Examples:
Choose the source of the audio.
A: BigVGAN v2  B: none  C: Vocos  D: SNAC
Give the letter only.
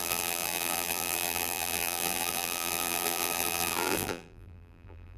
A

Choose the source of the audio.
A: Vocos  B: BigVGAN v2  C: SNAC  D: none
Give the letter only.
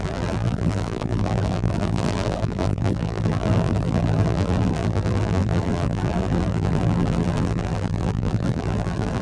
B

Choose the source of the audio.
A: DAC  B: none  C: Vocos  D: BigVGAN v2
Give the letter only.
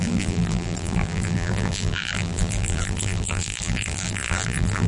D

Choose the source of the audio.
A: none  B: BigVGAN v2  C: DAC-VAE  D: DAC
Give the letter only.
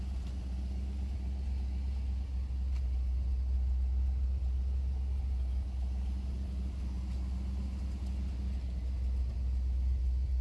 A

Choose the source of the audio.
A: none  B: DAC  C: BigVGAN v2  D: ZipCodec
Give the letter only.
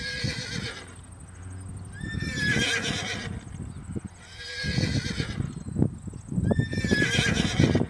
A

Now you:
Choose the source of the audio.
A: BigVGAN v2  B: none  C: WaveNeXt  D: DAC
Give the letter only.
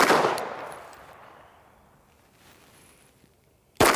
A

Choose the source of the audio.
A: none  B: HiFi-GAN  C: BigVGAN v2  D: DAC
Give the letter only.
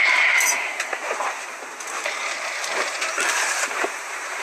C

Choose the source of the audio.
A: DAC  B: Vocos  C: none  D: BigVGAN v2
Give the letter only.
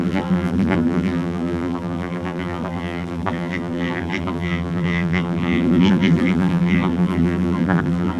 D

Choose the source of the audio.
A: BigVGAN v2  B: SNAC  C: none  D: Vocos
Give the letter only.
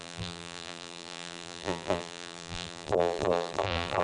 A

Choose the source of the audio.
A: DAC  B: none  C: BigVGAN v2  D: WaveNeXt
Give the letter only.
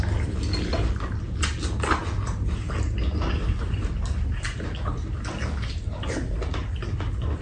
B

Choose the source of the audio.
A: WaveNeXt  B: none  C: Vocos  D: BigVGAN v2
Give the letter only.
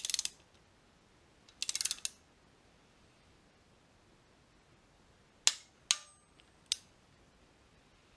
B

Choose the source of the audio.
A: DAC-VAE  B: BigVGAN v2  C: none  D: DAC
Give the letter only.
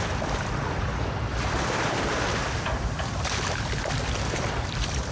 B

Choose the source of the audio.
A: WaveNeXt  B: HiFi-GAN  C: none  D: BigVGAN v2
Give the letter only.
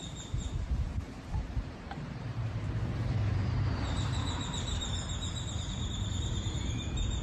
D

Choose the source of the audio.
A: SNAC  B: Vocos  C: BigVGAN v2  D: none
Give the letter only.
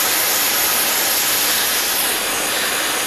D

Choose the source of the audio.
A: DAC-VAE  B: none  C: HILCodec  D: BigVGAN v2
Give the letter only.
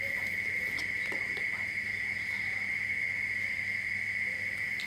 B